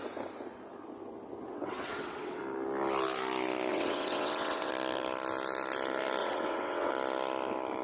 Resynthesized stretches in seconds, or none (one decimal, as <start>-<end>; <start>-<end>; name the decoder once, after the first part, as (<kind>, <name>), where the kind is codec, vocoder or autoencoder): 1.5-2.4 (vocoder, WaveNeXt); 3.7-4.7; 6.2-6.9